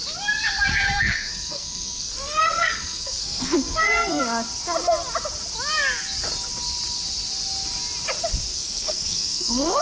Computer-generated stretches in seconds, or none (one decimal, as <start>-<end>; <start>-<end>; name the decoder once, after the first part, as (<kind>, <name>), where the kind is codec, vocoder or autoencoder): 0.7-4.2 (codec, SNAC); 8.5-9.8